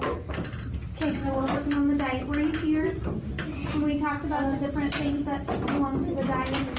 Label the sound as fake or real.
real